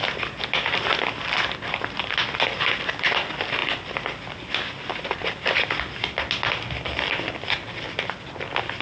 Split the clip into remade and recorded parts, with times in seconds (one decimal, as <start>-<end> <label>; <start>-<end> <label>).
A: 0.0-8.8 recorded